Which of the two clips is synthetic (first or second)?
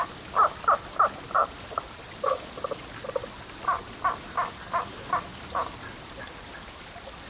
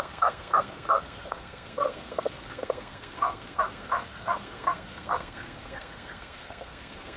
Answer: second